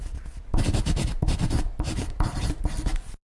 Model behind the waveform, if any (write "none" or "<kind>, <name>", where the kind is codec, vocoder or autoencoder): vocoder, BigVGAN v2